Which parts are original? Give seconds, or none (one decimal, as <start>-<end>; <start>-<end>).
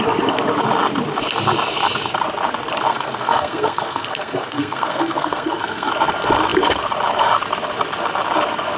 0.0-2.9; 5.9-8.8